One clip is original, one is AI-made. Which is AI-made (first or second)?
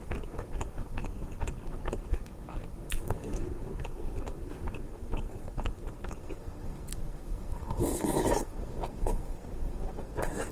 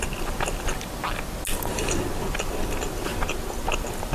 first